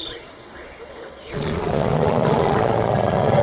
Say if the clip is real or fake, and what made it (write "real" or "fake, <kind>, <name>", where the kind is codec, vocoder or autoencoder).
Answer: fake, vocoder, Vocos